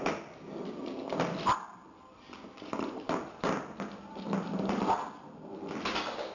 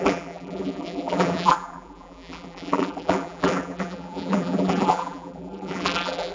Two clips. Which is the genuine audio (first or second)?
first